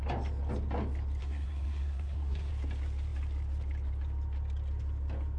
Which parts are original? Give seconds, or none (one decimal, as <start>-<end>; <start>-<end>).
0.0-1.2; 2.5-5.4

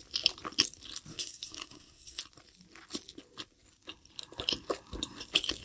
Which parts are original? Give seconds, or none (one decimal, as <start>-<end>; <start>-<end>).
0.0-1.1; 2.2-5.6

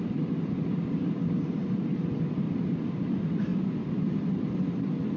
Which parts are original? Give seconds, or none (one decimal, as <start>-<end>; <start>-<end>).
0.0-5.2

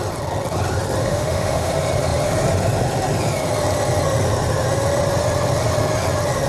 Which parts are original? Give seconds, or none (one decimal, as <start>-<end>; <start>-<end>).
0.0-1.0; 1.7-6.5

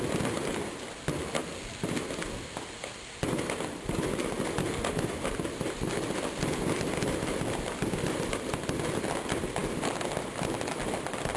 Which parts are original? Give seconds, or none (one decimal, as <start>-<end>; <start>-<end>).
0.0-11.4

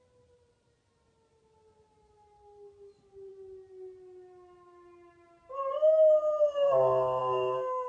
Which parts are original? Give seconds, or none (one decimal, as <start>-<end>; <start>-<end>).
0.0-7.9

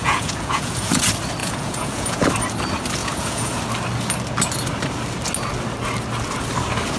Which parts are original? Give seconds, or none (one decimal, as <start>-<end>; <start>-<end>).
1.0-1.4; 2.2-3.0; 3.6-7.0

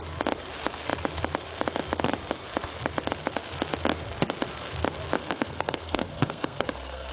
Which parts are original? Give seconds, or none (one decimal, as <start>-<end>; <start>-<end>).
0.0-5.2